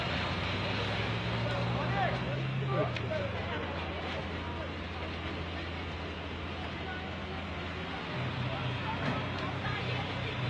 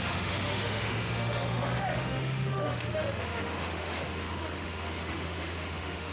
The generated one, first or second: second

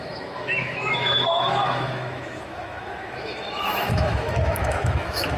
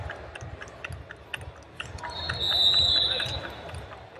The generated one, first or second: first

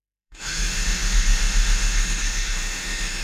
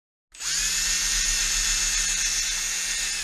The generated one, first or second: first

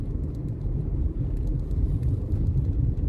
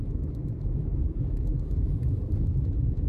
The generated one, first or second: second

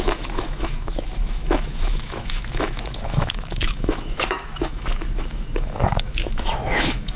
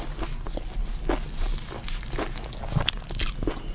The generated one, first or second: first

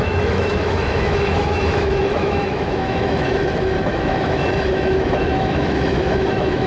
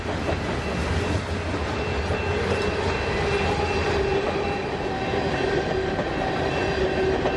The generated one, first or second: first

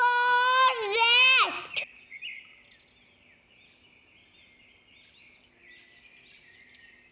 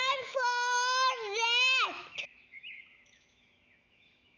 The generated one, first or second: second